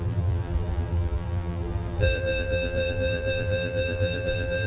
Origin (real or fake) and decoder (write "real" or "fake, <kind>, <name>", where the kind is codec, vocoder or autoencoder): fake, vocoder, BigVGAN v2